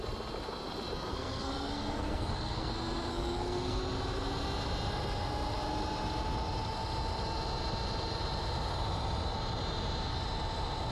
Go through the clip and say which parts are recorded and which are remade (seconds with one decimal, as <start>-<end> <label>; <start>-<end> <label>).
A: 0.0-1.1 recorded; 1.1-2.7 remade; 2.7-3.1 recorded; 3.1-3.8 remade; 3.8-10.9 recorded